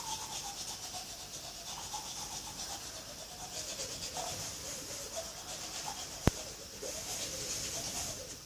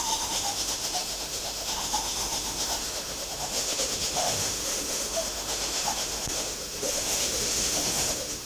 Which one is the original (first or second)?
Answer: first